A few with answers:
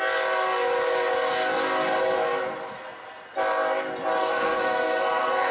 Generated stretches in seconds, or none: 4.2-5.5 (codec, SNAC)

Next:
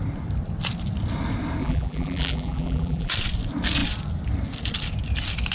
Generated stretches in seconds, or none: 1.6-3.1 (vocoder, BigVGAN v2)

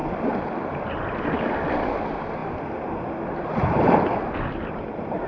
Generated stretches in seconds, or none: none

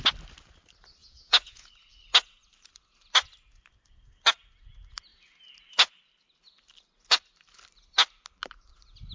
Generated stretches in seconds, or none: 1.0-1.7 (vocoder, Vocos)

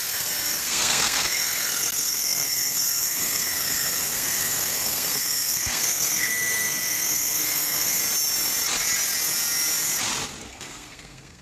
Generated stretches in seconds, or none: 0.0-8.0 (codec, SNAC); 10.5-11.4

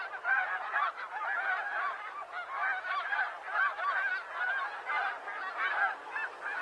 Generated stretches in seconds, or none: none

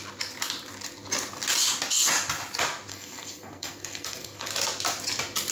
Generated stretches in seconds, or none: 2.9-4.5 (codec, SNAC)